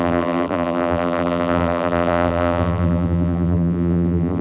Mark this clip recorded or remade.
remade